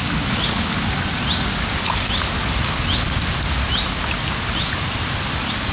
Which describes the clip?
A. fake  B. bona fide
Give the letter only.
B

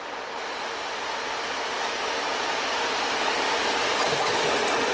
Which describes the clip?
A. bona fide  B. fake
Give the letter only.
A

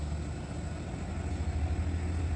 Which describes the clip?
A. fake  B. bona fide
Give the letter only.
B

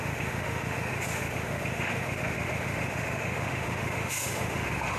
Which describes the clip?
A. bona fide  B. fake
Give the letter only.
B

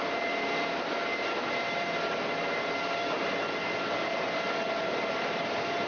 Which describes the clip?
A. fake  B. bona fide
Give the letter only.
B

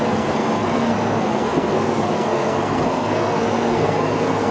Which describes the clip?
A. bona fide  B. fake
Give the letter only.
B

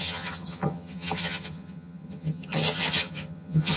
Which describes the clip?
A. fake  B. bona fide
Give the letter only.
A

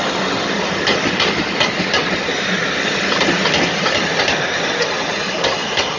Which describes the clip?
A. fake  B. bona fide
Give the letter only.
B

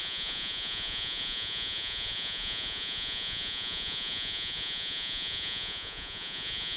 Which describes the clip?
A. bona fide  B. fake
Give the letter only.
B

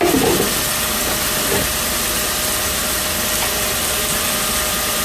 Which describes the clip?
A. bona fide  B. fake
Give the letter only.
A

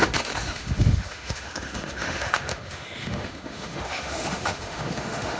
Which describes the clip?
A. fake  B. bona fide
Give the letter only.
A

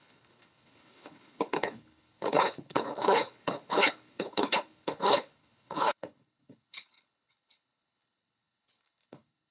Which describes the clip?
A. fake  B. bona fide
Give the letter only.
A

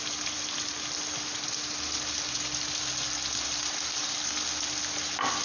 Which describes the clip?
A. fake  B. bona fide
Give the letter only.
B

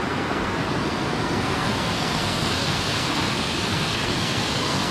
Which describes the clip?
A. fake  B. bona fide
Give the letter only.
A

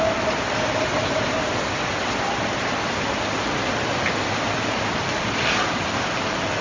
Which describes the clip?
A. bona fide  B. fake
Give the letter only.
A